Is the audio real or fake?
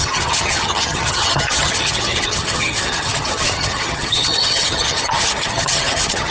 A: fake